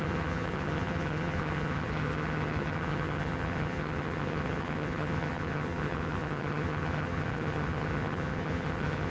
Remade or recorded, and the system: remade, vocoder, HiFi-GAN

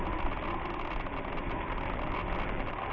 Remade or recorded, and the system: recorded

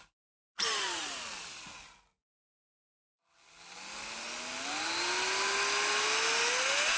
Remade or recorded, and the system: recorded